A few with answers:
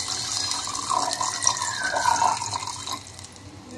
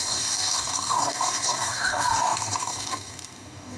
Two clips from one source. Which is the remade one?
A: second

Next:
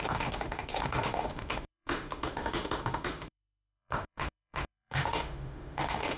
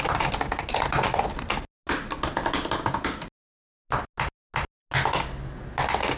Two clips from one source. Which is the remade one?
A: first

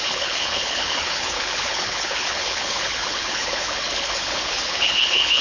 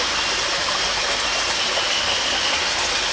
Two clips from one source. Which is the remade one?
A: first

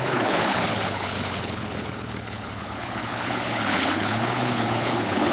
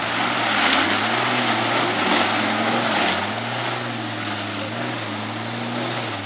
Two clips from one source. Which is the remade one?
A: first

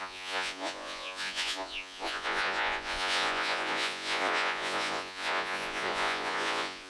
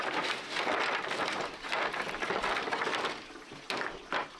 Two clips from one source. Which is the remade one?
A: first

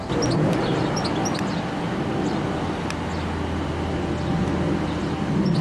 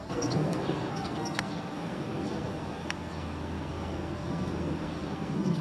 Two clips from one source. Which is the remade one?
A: second